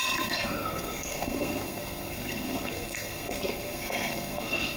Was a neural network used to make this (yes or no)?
yes